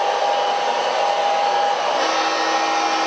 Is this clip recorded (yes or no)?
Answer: yes